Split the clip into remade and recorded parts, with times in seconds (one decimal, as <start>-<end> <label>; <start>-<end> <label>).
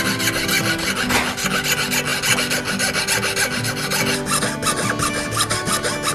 0.0-6.1 recorded